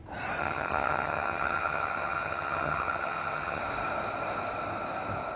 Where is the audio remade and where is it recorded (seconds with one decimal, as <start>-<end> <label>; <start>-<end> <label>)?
0.0-0.4 recorded; 0.4-3.6 remade; 3.6-5.4 recorded